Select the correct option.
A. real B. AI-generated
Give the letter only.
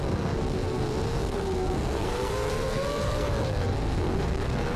B